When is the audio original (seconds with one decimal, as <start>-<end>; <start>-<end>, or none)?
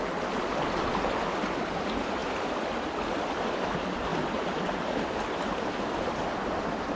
0.0-7.0